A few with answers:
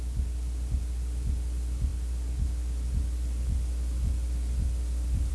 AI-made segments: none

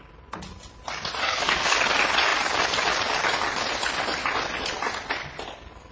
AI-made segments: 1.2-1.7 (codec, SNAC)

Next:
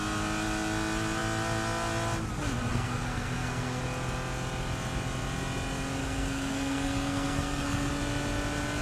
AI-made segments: 2.7-3.8 (codec, SNAC); 6.0-7.9